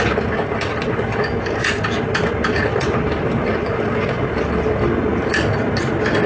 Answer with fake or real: real